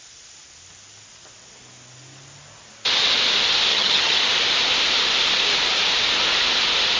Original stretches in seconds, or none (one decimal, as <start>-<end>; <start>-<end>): 0.0-3.7; 4.2-7.0